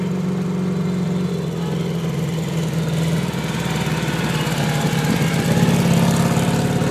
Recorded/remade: recorded